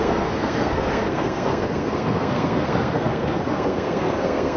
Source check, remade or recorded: remade